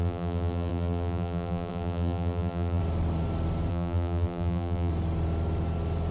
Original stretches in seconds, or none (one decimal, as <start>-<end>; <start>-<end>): 2.8-3.7; 4.9-6.1